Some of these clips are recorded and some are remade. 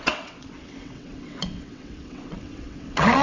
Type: remade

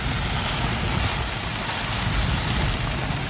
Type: recorded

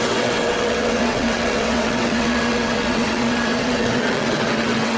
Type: remade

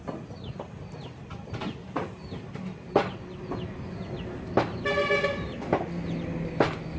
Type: recorded